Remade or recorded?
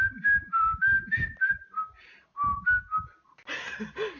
recorded